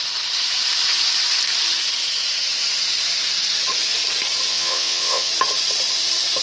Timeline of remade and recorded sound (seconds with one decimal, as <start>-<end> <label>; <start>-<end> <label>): 0.0-4.5 recorded; 4.5-5.3 remade; 5.3-6.4 recorded